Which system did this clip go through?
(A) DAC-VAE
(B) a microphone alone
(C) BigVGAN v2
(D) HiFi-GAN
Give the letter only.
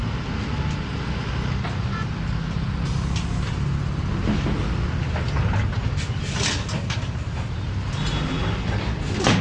B